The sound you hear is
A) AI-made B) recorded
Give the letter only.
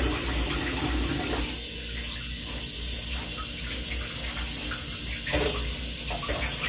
B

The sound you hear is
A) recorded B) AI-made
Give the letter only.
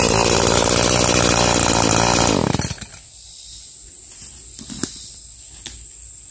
A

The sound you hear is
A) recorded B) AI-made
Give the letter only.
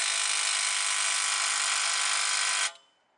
A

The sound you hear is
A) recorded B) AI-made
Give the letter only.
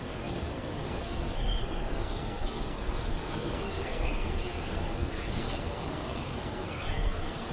B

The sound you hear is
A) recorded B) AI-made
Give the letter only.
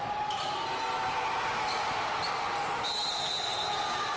A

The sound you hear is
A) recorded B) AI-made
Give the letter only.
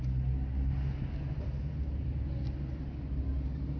A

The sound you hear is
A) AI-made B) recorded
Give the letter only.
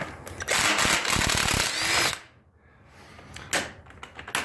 B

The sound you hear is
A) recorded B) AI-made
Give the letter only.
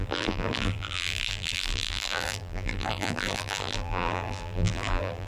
B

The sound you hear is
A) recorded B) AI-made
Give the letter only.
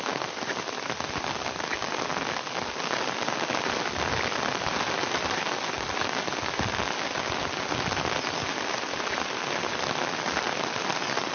A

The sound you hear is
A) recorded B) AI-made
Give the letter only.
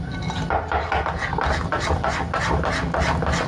A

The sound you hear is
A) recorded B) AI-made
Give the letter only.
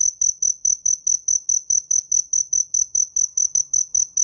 A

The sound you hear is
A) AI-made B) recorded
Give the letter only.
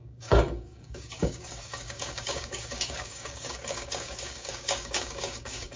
A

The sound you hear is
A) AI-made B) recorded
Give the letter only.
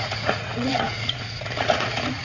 A